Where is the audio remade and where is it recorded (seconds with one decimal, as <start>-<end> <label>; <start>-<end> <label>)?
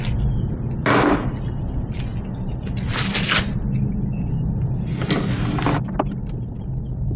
0.0-7.2 recorded